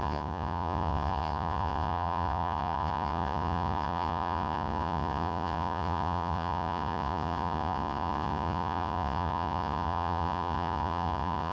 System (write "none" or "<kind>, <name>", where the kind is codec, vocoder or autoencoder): vocoder, Vocos